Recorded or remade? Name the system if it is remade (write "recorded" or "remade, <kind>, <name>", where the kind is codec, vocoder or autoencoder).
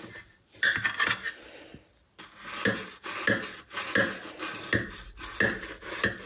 recorded